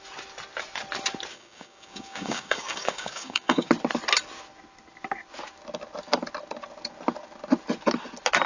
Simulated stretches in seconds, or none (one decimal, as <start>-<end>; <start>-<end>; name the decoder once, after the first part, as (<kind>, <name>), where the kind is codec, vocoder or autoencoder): 1.3-3.7 (codec, DAC)

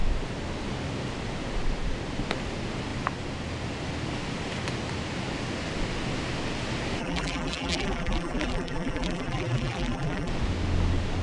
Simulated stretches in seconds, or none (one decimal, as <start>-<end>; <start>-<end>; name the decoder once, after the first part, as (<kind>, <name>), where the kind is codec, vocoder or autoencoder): 7.0-10.3 (vocoder, BigVGAN v2)

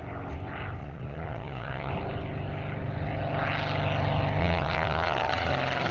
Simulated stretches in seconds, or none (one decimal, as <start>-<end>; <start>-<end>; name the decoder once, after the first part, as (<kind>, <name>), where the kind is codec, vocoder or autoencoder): 0.8-1.9 (vocoder, Vocos); 4.4-5.5

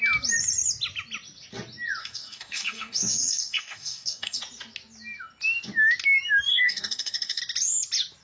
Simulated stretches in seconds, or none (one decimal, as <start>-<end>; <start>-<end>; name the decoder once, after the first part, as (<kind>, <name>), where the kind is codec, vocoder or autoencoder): 2.0-4.4 (codec, DAC); 6.5-7.4

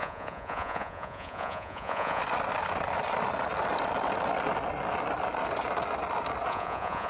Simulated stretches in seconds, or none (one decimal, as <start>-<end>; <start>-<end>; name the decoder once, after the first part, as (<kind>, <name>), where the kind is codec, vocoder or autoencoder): 0.0-2.2 (vocoder, Vocos); 6.5-7.1